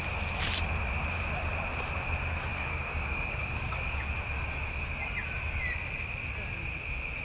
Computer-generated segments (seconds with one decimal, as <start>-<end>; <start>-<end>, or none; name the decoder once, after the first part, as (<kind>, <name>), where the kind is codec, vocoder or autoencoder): 2.5-4.1 (codec, DAC)